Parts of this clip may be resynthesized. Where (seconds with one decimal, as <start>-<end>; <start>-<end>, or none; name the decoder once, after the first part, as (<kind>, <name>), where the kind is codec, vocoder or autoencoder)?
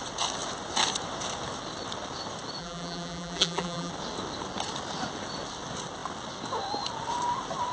2.6-3.9 (vocoder, BigVGAN v2)